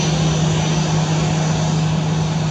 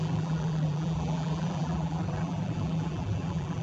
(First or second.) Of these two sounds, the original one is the first